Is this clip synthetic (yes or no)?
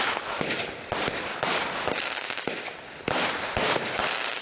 no